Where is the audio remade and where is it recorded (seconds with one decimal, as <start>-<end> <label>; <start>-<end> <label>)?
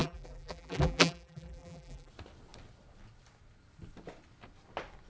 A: 0.0-2.1 remade; 2.1-5.1 recorded